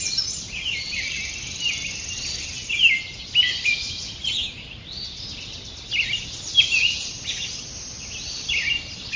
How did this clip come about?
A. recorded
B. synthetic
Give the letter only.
A